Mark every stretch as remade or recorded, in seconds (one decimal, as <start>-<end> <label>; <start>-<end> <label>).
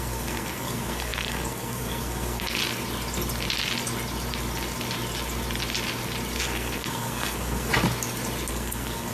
0.0-2.6 remade; 2.6-6.4 recorded; 6.4-7.7 remade; 7.7-8.5 recorded; 8.5-9.1 remade